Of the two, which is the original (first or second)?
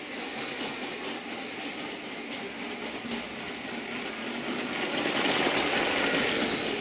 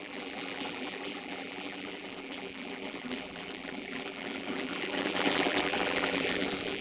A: first